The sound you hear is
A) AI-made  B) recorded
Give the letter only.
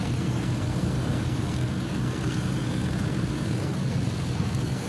A